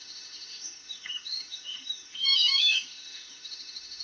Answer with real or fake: fake